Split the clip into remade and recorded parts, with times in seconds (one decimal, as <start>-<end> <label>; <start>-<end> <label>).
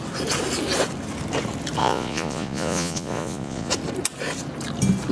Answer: 0.0-1.8 recorded; 1.8-3.7 remade; 3.7-5.1 recorded